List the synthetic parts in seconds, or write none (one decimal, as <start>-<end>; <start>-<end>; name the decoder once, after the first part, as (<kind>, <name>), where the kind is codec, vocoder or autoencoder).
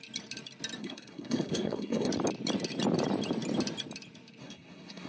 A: 0.8-2.1 (codec, SNAC); 4.4-5.1